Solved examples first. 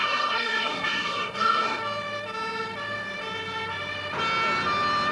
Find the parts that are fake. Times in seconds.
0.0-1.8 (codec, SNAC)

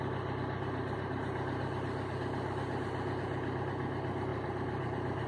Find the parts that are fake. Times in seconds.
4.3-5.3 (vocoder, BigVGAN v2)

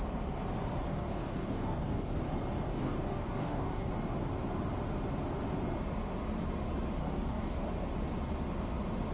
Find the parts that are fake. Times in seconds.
0.9-2.3 (codec, DAC); 2.7-3.9; 7.0-7.7